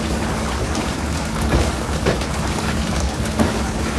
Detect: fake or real fake